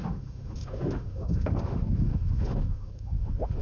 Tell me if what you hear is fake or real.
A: fake